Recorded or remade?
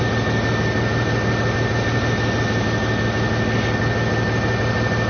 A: recorded